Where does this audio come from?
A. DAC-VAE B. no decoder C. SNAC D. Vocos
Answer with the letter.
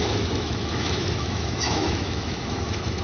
A